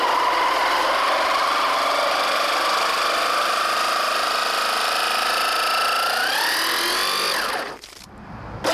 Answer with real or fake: real